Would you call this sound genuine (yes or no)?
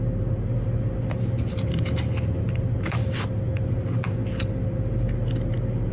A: yes